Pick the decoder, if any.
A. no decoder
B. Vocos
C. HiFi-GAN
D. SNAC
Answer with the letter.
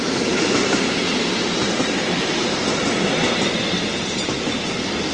A